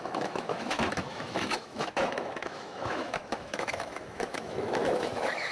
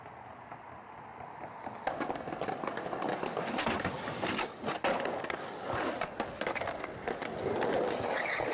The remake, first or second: first